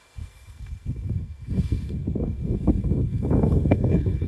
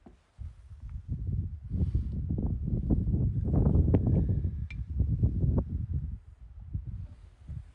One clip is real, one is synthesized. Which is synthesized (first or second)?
first